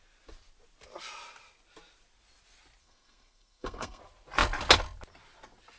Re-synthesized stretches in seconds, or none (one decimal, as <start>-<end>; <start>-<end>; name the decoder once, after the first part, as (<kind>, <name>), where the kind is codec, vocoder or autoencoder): 2.8-4.0 (codec, SNAC)